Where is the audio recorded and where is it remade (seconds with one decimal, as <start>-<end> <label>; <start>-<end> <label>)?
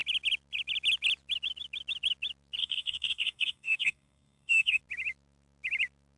0.0-2.6 recorded; 2.6-4.8 remade; 4.8-6.2 recorded